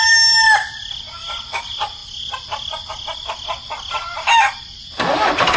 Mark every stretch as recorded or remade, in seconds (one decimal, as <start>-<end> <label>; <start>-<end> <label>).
0.0-5.6 recorded